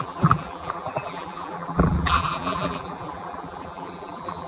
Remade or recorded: remade